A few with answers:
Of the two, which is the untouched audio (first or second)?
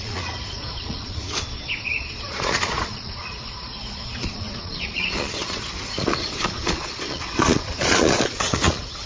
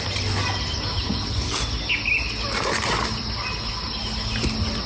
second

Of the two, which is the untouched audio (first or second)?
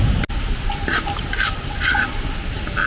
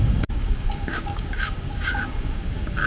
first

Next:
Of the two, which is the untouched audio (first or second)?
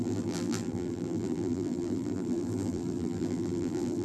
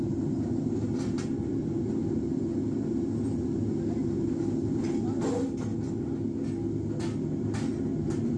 second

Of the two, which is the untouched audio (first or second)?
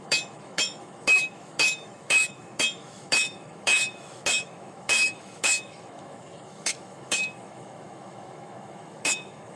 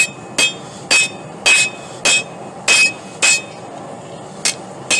second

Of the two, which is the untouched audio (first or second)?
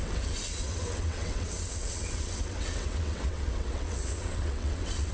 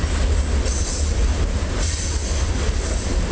second